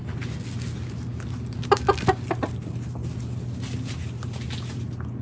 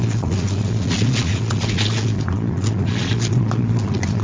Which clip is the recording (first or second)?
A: first